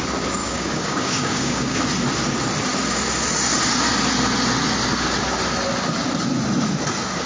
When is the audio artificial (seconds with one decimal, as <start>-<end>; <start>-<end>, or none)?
0.4-1.8